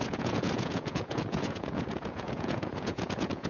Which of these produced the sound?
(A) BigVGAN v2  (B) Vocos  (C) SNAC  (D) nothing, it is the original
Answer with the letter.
B